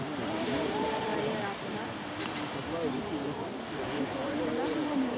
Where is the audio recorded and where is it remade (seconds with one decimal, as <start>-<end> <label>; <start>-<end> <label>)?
0.0-1.1 remade; 1.1-2.9 recorded; 2.9-5.2 remade